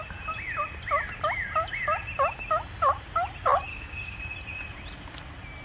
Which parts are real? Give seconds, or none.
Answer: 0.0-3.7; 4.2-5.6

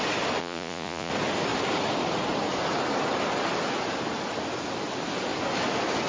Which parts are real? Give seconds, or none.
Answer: 0.0-0.4; 1.1-6.1

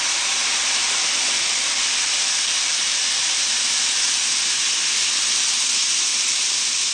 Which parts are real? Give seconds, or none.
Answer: 0.0-0.8; 4.6-6.1

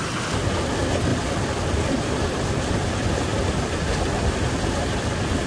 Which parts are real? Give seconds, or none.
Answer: 0.0-5.5

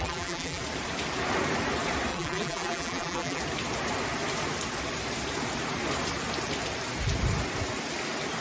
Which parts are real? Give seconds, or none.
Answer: 0.6-2.1; 3.4-8.4

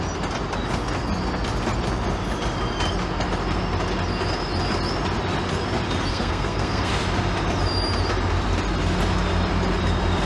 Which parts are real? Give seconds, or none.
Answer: 0.0-6.1; 6.9-10.3

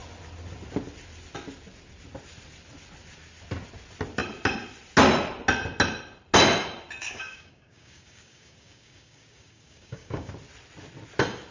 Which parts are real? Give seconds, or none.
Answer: 0.0-7.0; 10.3-11.5

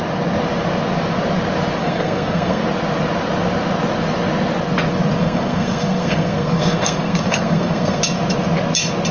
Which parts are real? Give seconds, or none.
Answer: 0.0-1.8; 2.6-5.2; 8.0-9.1